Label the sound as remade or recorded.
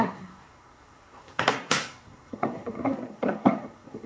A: remade